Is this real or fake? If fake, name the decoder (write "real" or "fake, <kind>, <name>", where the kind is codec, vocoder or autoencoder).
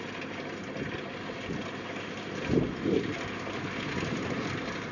real